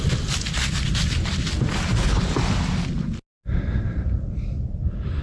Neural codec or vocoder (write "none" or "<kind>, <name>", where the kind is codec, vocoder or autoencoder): none